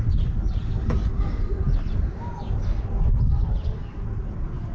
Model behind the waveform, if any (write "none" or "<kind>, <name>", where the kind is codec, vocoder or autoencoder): none